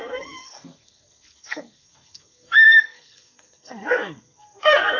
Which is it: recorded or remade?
remade